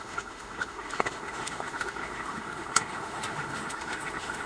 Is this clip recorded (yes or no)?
no